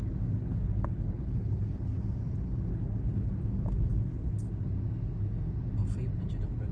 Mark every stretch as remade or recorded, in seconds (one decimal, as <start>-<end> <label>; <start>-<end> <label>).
0.0-0.4 recorded; 0.4-2.0 remade; 2.0-2.7 recorded; 2.7-3.3 remade; 3.3-6.7 recorded